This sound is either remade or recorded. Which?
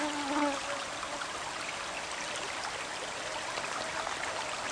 recorded